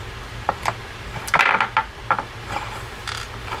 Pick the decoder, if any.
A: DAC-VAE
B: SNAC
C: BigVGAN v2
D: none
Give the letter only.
D